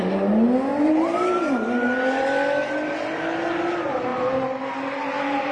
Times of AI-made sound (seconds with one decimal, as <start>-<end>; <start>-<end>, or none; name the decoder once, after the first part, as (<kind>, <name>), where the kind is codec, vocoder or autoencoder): 0.7-1.4 (vocoder, BigVGAN v2); 4.1-4.6